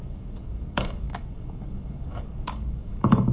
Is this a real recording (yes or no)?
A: no